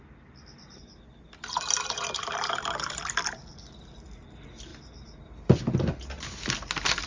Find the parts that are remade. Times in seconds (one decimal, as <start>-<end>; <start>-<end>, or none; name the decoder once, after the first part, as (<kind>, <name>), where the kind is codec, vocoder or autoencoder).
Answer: none

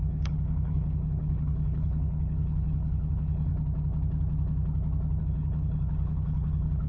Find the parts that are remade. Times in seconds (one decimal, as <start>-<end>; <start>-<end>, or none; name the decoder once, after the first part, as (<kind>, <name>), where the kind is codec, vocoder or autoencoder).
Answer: 0.0-3.5 (codec, HILCodec); 5.2-6.9